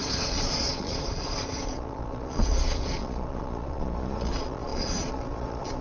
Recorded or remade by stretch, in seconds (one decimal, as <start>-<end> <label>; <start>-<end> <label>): 0.0-5.8 remade